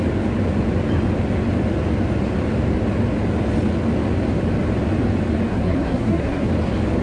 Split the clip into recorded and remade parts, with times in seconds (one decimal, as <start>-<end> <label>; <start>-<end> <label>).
0.0-5.5 recorded; 5.5-6.5 remade; 6.5-7.0 recorded